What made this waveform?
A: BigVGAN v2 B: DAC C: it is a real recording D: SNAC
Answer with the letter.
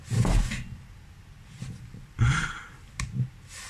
C